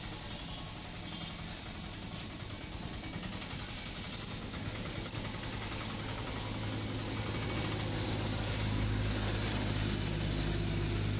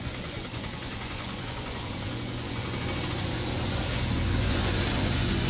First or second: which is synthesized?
second